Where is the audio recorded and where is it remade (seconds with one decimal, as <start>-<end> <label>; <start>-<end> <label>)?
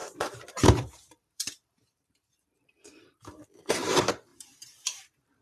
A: 0.0-3.2 remade; 3.2-4.3 recorded; 4.3-5.4 remade